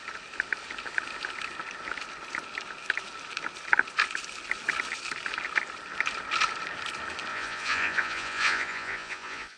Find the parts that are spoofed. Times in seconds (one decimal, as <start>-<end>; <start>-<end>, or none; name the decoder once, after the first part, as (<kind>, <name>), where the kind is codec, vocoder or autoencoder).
7.3-9.6 (vocoder, Vocos)

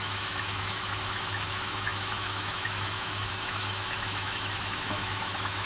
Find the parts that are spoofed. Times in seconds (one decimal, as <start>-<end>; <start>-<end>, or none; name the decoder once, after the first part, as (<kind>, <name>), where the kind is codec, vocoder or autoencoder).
0.0-5.7 (autoencoder, DAC-VAE)

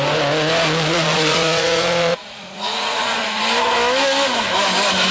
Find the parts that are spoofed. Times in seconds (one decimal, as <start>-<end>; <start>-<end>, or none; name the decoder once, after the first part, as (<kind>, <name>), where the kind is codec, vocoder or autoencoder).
0.9-3.4 (vocoder, Vocos)

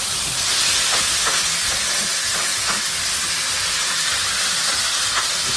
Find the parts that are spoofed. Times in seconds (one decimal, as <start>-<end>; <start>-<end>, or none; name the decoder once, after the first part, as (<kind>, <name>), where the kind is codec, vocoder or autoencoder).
none

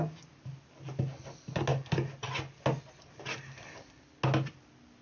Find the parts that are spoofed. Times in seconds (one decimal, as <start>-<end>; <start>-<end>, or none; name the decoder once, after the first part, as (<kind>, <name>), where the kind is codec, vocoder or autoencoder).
none

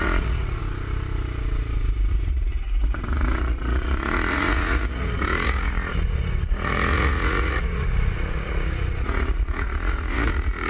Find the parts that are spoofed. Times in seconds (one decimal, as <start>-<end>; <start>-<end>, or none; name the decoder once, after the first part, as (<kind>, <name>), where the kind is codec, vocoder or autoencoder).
0.0-0.6 (vocoder, Vocos); 2.1-10.7

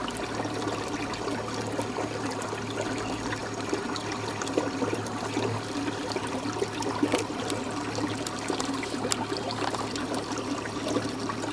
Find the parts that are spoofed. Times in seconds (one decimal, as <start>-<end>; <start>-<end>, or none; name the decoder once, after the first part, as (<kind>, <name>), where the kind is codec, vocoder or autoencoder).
none